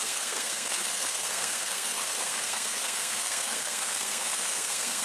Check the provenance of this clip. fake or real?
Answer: fake